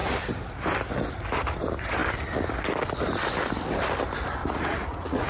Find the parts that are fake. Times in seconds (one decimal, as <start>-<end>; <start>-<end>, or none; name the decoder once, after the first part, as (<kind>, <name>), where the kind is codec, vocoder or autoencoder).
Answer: 4.4-5.3 (vocoder, Vocos)

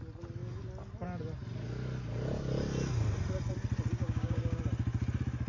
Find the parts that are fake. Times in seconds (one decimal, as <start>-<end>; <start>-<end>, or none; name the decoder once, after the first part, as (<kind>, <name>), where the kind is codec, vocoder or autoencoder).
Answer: 4.0-4.6 (codec, DAC)

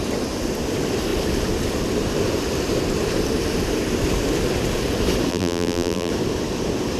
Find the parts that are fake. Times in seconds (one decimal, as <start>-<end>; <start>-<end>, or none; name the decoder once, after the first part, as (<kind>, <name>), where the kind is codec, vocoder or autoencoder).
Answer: 5.3-6.1 (vocoder, BigVGAN v2)

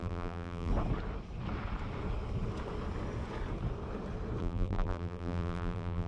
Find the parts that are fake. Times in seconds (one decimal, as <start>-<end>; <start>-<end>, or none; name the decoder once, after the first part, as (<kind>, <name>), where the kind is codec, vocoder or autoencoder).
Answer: 0.0-0.7 (vocoder, BigVGAN v2); 4.4-6.1

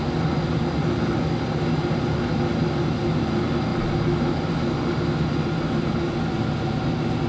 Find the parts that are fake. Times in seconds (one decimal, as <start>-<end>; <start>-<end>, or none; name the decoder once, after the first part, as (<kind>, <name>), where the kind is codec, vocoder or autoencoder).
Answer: none